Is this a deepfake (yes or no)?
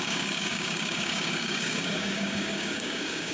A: yes